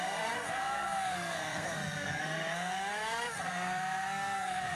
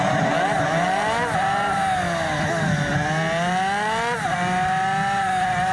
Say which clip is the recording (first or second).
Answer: second